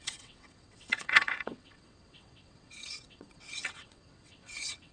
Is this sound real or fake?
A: fake